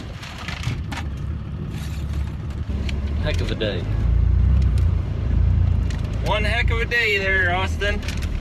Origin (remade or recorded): remade